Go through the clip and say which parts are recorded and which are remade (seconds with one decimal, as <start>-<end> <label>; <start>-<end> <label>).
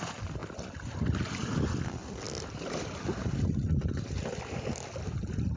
0.0-5.6 recorded